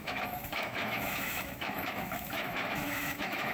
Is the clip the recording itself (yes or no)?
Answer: no